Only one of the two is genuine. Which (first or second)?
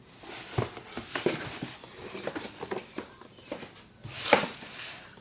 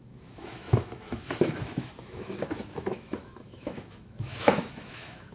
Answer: first